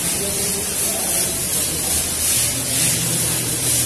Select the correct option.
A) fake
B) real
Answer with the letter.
B